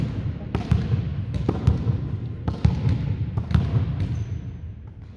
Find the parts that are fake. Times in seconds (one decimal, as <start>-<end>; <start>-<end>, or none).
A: none